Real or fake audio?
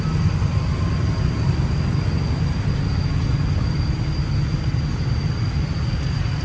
real